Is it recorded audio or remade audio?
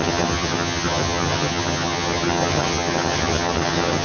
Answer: remade